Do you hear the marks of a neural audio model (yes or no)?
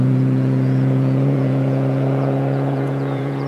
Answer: yes